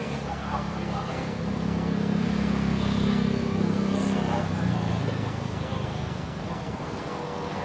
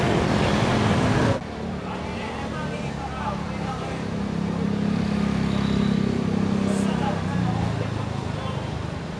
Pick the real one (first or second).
second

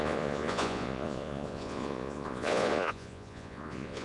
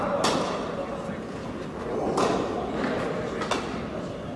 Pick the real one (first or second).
second